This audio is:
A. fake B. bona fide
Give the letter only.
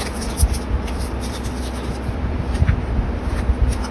B